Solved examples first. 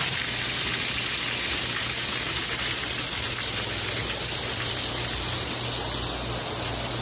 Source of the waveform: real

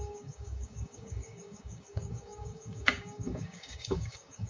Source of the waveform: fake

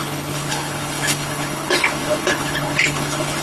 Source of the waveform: fake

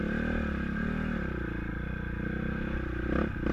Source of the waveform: real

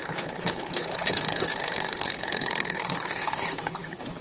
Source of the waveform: fake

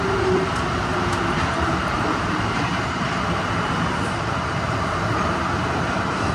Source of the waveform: fake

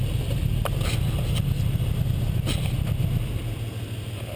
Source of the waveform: real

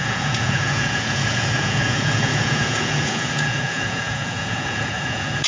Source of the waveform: fake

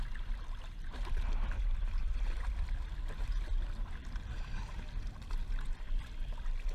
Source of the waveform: fake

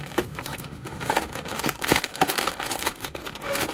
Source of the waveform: fake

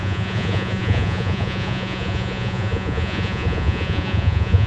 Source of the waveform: fake